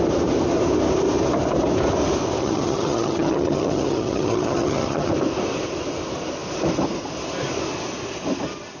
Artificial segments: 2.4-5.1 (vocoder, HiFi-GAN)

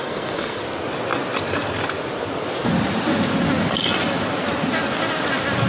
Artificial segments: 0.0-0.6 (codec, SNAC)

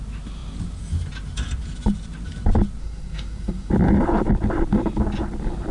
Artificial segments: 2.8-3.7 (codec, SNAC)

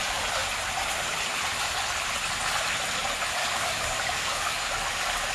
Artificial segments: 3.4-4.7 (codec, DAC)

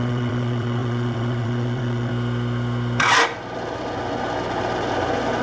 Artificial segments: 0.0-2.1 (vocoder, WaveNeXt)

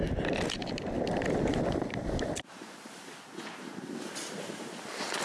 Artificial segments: none